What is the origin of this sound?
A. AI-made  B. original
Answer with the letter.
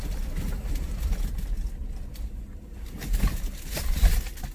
B